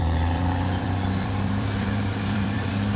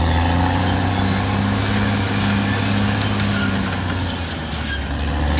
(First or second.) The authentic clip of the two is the second